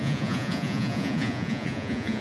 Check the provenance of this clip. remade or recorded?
remade